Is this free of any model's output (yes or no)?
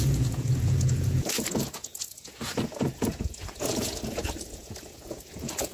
no